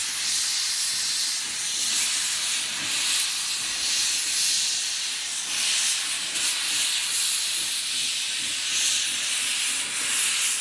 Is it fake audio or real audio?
real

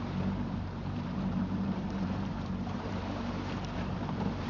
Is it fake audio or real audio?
fake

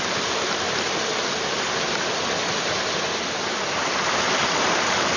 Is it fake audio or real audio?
real